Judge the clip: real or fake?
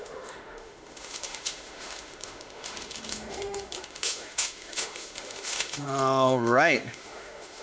fake